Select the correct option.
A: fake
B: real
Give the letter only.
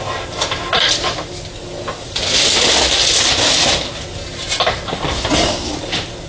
B